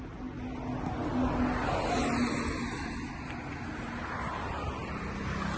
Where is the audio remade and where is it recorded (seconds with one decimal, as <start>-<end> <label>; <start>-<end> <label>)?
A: 0.0-5.6 recorded